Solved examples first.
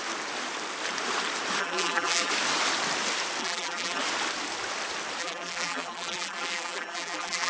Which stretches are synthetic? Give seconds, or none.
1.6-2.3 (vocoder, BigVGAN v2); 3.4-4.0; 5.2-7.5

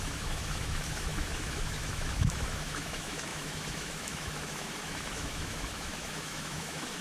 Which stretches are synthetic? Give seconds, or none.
0.0-7.0 (autoencoder, DAC-VAE)

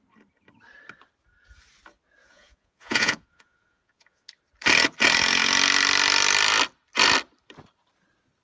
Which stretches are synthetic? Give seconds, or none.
2.2-4.3 (vocoder, Vocos)

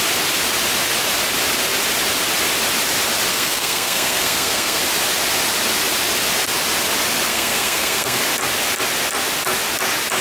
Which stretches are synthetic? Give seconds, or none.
3.3-4.8 (codec, SNAC); 7.3-8.2